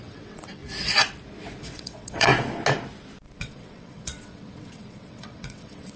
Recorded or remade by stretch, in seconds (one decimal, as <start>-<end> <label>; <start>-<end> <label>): 0.0-0.6 remade; 0.6-1.6 recorded; 1.6-2.3 remade; 2.3-3.4 recorded; 3.4-6.0 remade